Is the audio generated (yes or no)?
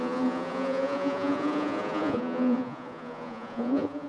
yes